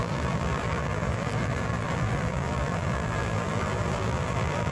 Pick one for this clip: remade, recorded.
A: remade